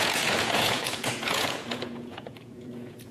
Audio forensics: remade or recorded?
remade